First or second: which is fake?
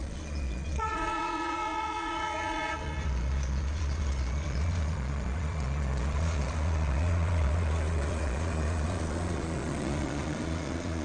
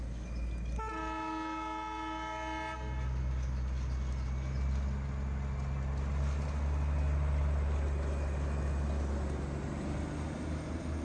first